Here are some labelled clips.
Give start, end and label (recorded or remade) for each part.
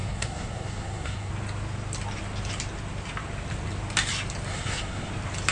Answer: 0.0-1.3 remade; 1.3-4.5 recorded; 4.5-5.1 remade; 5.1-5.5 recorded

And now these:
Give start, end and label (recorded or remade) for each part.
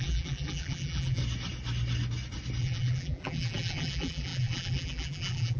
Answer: 0.0-1.2 remade; 1.2-2.6 recorded; 2.6-5.6 remade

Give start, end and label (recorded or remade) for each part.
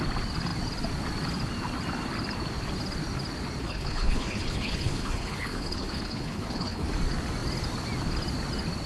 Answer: 0.0-3.6 recorded; 3.6-6.9 remade; 6.9-8.9 recorded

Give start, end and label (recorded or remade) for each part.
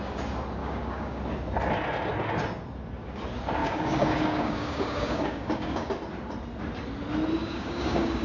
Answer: 0.0-0.6 recorded; 0.6-1.2 remade; 1.2-3.6 recorded; 3.6-5.9 remade; 5.9-7.4 recorded; 7.4-8.2 remade